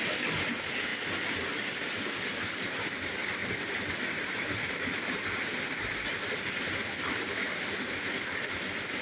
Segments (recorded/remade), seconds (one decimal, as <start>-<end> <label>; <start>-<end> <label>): 0.0-9.0 recorded

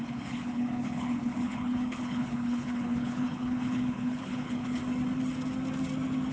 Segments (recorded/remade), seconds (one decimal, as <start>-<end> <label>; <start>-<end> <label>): 0.0-4.8 remade; 4.8-6.3 recorded

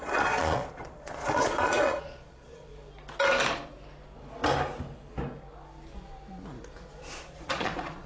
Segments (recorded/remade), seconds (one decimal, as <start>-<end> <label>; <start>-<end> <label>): 0.0-2.7 remade; 2.7-6.9 recorded; 6.9-8.1 remade

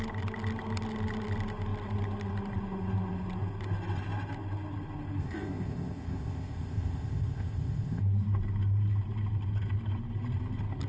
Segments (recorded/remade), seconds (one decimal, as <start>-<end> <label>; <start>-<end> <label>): 0.0-5.2 recorded; 5.2-8.0 remade; 8.0-10.9 recorded

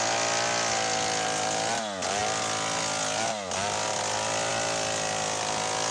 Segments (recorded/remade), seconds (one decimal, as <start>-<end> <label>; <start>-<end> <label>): 0.0-5.9 recorded

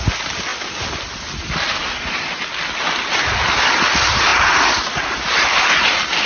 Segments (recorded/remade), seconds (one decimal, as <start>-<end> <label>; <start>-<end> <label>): 0.0-6.3 recorded

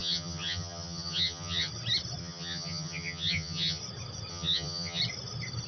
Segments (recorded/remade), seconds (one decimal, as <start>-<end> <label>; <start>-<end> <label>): 0.0-1.7 remade; 1.7-2.2 recorded; 2.2-3.8 remade; 3.8-4.3 recorded; 4.3-5.0 remade; 5.0-5.7 recorded

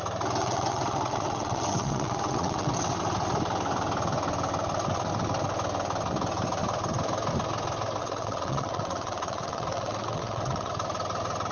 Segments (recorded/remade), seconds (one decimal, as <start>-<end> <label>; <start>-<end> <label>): 0.0-0.4 recorded; 0.4-2.7 remade; 2.7-8.0 recorded; 8.0-10.7 remade; 10.7-11.5 recorded